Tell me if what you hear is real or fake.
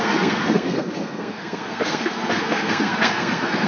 fake